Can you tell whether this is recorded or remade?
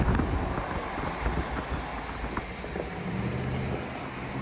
recorded